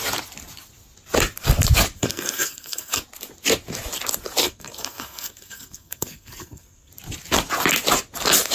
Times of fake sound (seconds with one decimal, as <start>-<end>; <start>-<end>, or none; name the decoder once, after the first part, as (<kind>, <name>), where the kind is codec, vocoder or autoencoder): 2.0-3.0 (codec, SNAC); 4.4-6.9